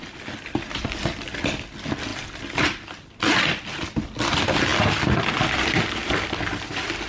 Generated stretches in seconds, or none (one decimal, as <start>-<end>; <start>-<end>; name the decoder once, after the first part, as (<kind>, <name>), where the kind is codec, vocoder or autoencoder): none